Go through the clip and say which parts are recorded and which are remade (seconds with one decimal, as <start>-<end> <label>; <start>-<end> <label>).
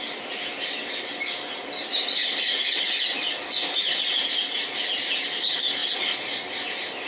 0.0-2.2 recorded; 2.2-3.5 remade; 3.5-7.1 recorded